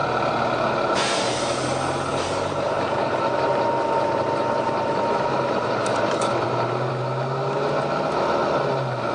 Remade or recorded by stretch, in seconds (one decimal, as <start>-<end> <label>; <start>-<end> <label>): 0.0-2.1 recorded; 2.1-6.9 remade; 6.9-9.1 recorded